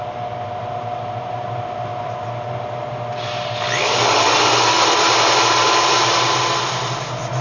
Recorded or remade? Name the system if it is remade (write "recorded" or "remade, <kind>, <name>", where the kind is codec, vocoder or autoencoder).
recorded